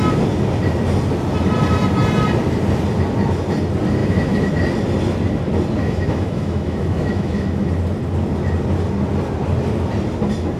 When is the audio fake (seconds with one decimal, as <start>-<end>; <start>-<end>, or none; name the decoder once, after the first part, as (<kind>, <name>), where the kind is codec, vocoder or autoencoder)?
4.0-4.5 (autoencoder, DAC-VAE); 5.8-7.7